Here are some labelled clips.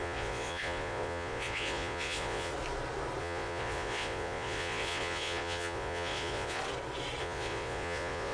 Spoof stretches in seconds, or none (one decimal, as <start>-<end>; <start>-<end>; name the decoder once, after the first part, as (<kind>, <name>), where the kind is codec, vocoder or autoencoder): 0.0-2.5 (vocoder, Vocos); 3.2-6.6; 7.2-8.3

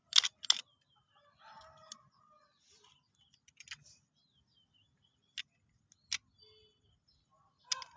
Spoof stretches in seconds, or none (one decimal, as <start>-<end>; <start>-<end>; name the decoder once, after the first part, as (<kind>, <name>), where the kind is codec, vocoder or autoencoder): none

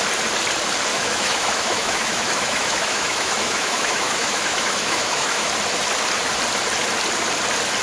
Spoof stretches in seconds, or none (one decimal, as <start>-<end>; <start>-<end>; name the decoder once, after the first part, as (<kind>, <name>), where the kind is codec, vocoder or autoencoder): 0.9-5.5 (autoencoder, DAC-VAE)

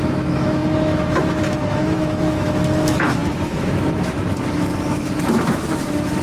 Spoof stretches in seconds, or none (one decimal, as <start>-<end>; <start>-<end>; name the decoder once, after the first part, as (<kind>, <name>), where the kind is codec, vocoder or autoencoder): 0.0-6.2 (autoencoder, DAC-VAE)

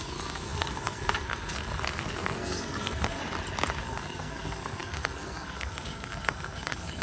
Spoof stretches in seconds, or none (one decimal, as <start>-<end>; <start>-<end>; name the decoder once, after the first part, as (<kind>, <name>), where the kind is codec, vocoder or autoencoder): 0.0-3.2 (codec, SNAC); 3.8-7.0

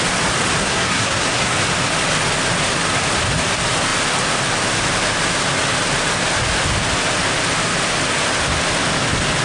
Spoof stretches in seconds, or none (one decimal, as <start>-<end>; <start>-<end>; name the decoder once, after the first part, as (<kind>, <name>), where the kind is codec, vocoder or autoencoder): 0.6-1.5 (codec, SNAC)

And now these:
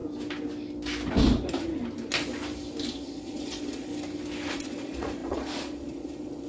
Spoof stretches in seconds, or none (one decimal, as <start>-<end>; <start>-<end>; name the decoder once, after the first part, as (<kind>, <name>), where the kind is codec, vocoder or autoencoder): 2.9-3.9 (vocoder, Vocos); 4.5-6.5

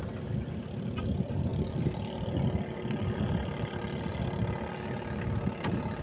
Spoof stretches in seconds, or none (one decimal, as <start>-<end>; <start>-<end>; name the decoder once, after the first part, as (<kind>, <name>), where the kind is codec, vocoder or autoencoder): 0.0-6.0 (vocoder, BigVGAN v2)